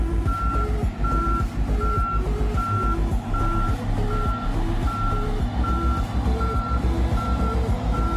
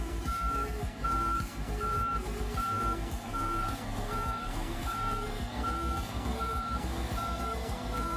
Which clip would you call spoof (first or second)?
second